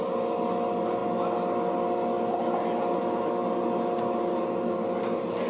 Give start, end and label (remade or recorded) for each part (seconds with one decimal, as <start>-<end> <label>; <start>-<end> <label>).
0.0-5.5 recorded